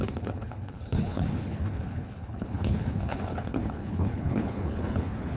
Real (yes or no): no